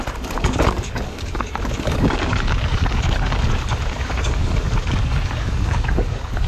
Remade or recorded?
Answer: remade